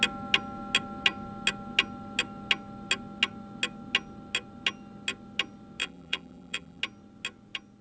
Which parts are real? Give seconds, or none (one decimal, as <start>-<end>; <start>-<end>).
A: 0.0-5.8; 6.8-7.8